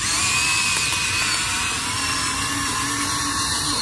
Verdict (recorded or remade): recorded